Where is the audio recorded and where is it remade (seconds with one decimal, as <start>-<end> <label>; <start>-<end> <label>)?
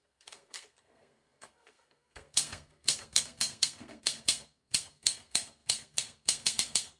0.0-7.0 remade